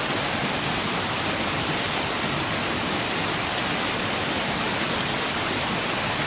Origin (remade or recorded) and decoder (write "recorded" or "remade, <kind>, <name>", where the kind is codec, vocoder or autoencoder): recorded